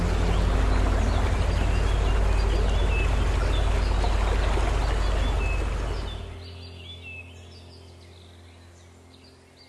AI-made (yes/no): no